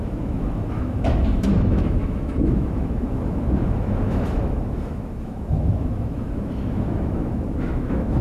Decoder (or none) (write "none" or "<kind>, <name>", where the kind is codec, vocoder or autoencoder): autoencoder, DAC-VAE